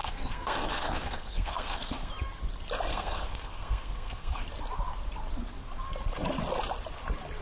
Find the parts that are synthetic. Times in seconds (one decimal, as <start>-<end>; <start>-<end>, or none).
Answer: 0.0-2.1; 2.9-4.4